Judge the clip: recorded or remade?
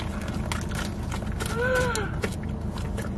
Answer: recorded